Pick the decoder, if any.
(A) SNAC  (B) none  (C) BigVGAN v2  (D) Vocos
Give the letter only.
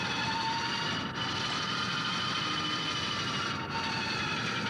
B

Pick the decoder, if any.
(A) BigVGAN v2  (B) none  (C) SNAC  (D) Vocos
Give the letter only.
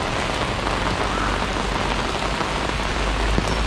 B